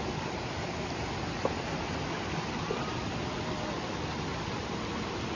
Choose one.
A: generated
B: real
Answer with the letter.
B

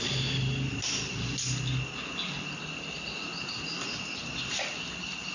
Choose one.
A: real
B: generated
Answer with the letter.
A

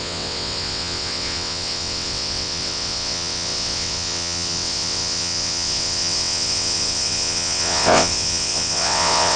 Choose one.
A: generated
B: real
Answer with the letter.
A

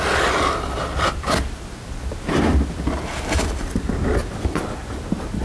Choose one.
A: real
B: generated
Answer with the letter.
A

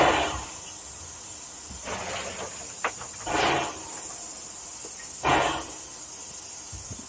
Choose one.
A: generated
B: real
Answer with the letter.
B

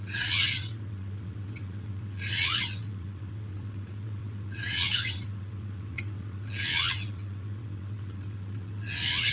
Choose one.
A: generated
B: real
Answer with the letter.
A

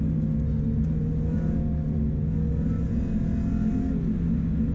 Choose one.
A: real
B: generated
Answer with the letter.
A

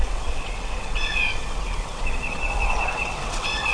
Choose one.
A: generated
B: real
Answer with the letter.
A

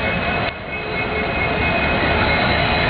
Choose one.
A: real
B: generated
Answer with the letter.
A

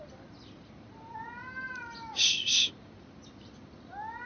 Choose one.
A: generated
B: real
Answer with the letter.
B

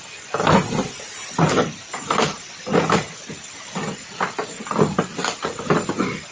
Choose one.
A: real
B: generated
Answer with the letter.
A